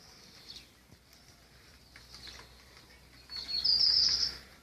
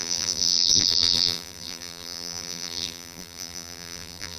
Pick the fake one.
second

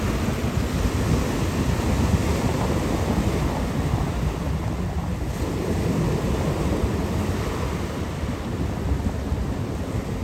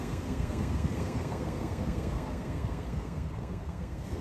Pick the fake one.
second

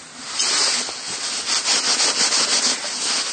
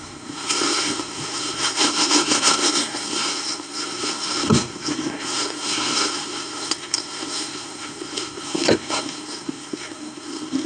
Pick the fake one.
second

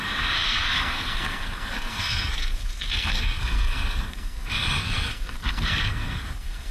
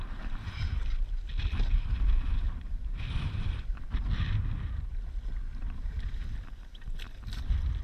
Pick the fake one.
first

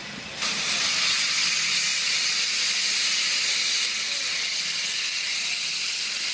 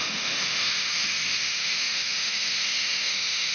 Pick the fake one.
second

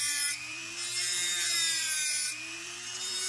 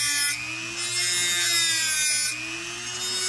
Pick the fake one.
first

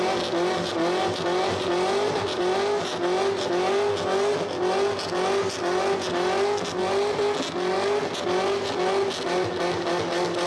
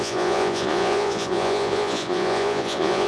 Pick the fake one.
second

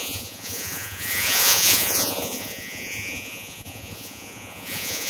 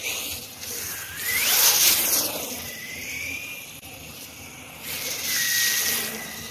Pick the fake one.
first